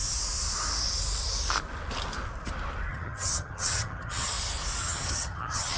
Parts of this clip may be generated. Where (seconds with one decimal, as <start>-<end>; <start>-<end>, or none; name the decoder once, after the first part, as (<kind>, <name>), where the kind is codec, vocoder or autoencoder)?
2.9-4.3 (vocoder, HiFi-GAN); 4.8-5.8